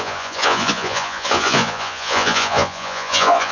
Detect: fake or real fake